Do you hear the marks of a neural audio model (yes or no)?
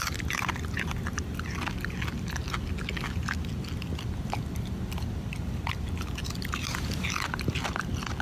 no